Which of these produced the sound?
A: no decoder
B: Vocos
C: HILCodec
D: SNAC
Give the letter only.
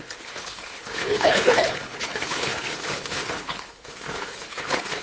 C